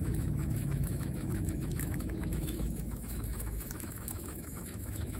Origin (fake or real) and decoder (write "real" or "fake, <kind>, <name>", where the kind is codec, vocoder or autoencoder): fake, autoencoder, DAC-VAE